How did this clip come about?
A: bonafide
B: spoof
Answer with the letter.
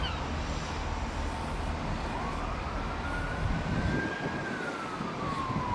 A